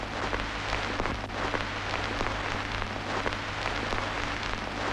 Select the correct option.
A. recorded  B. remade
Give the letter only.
A